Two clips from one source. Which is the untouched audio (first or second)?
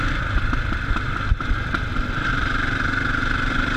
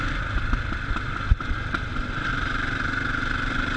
second